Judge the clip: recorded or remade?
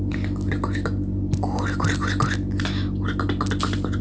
recorded